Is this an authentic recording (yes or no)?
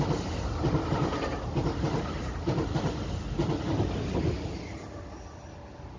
yes